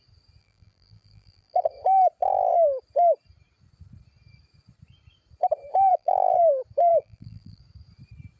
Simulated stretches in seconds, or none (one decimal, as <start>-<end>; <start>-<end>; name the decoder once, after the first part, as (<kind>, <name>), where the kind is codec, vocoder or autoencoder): 0.4-1.7 (vocoder, BigVGAN v2); 5.9-6.4; 6.9-7.6